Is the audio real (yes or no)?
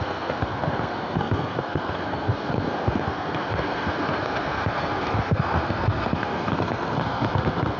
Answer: no